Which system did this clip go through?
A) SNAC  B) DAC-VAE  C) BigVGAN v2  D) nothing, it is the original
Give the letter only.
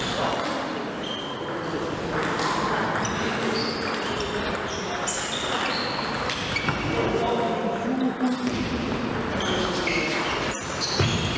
D